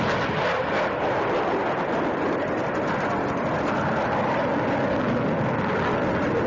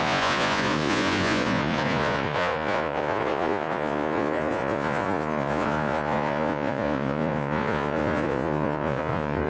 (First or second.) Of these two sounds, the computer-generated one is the second